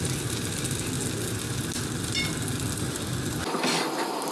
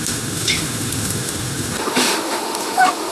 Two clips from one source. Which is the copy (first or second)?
second